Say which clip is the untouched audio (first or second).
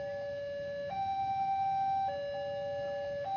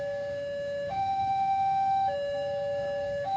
first